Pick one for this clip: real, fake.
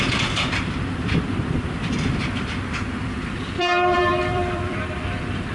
fake